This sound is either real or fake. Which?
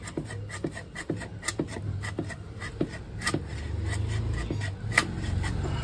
real